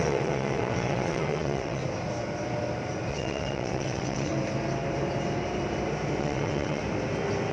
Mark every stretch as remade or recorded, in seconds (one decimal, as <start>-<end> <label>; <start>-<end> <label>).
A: 0.0-1.8 remade; 1.8-3.1 recorded; 3.1-4.3 remade; 4.3-6.2 recorded; 6.2-6.8 remade; 6.8-7.5 recorded